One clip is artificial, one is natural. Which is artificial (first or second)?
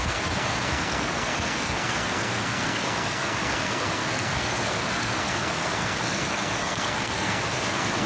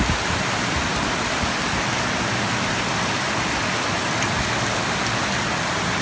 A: first